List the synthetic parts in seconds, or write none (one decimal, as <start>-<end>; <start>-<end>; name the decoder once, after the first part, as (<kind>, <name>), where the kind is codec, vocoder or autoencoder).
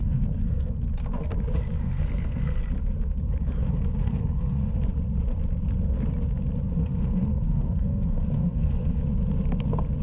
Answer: 0.0-0.7 (codec, SNAC); 1.8-2.6; 4.0-4.7; 6.8-9.0